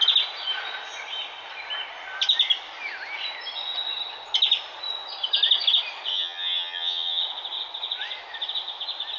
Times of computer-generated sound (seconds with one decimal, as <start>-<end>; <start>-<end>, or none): 6.1-7.2